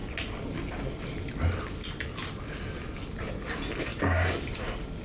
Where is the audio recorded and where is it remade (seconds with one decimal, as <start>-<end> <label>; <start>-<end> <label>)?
0.0-5.0 recorded